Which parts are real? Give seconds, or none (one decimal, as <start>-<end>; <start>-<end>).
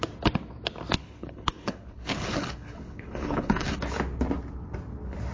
0.0-1.0; 3.8-5.3